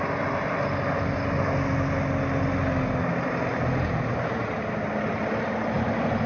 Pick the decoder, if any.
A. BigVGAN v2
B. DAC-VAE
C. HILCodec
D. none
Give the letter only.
D